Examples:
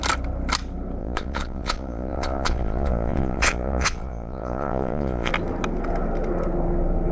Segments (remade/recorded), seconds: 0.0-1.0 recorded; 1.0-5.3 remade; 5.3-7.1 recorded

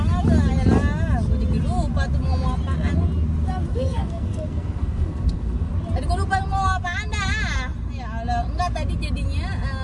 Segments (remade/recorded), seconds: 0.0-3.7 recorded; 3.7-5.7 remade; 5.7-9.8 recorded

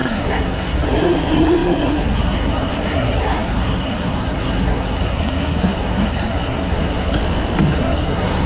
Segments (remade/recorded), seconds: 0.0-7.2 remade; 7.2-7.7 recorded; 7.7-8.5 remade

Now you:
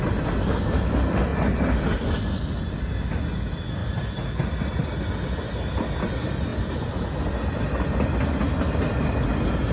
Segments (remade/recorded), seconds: 0.0-9.7 recorded

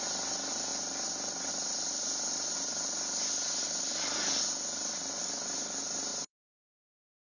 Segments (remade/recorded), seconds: 0.0-0.7 recorded; 0.7-1.5 remade; 1.5-6.1 recorded; 6.1-7.3 remade

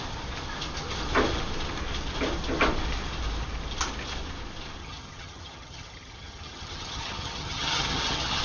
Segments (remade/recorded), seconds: 0.0-4.8 recorded; 4.8-8.4 remade

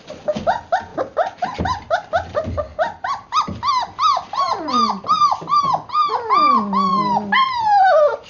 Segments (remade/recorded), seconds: 0.0-2.7 recorded; 2.7-5.6 remade; 5.6-8.3 recorded